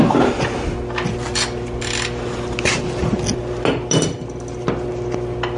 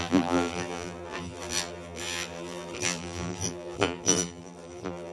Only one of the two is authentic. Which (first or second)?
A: first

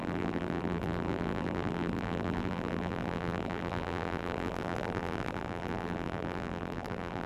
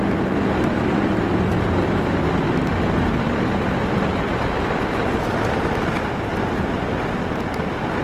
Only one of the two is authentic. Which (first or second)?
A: second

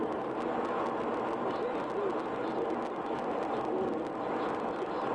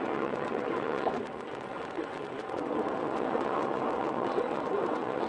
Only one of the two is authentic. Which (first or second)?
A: first